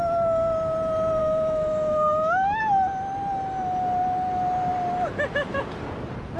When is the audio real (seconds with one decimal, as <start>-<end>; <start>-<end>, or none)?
0.0-1.2; 2.6-6.4